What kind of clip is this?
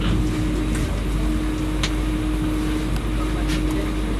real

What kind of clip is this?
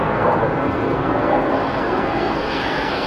fake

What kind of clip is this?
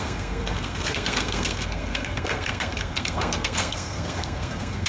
fake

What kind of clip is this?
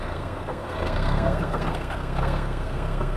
fake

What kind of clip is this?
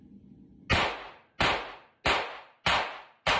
real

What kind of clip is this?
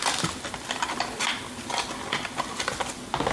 real